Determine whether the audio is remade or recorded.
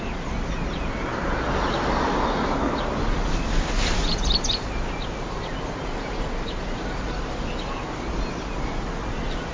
recorded